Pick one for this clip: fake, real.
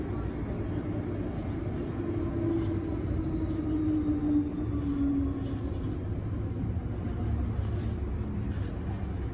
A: real